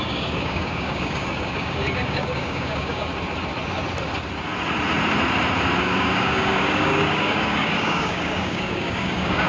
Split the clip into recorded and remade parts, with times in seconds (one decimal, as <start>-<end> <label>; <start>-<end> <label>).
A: 0.0-3.1 remade; 3.1-5.8 recorded; 5.8-9.5 remade